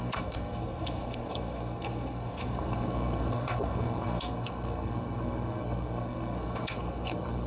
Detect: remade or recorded remade